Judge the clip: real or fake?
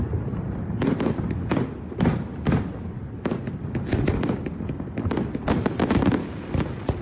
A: real